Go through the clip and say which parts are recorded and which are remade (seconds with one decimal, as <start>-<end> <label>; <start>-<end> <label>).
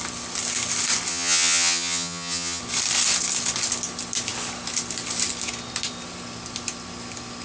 0.0-1.1 recorded; 1.1-2.6 remade; 2.6-7.4 recorded